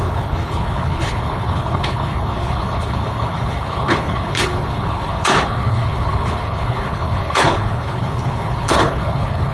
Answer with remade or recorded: remade